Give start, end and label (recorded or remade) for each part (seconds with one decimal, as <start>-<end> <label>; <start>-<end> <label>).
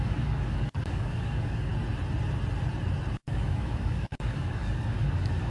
0.0-1.7 remade; 1.7-3.3 recorded; 3.3-5.5 remade